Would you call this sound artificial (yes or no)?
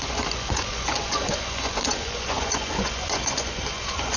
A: yes